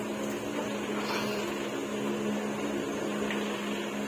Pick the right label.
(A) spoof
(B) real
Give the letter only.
B